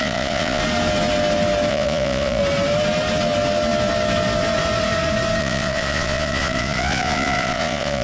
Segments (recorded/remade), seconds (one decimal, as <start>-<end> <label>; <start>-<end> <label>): 0.0-0.6 remade; 0.6-1.7 recorded; 1.7-2.4 remade; 2.4-5.4 recorded; 5.4-8.0 remade